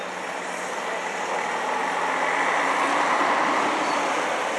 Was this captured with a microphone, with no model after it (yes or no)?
yes